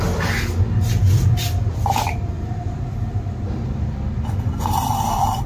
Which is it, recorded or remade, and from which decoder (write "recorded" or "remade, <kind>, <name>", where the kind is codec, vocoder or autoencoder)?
recorded